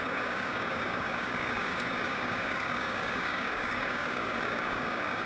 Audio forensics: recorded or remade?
remade